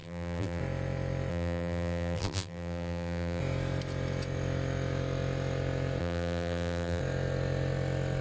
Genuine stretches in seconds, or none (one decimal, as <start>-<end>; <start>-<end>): 0.6-1.3; 3.4-6.0; 7.0-8.2